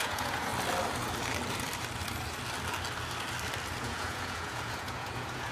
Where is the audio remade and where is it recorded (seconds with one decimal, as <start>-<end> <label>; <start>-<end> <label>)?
0.0-0.5 remade; 0.5-3.8 recorded; 3.8-5.5 remade